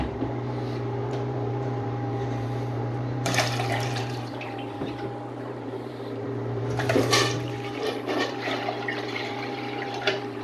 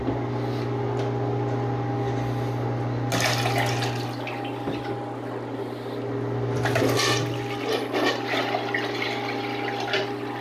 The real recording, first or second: second